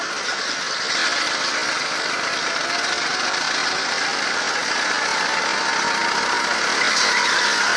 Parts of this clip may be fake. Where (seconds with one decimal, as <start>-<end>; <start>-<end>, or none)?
none